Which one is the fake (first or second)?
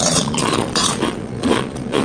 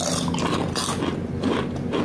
first